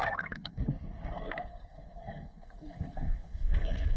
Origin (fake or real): fake